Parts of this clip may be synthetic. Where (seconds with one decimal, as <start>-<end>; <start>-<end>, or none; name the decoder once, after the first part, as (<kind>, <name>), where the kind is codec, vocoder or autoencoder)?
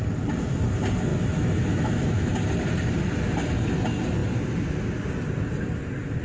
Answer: 1.1-2.3 (autoencoder, DAC-VAE)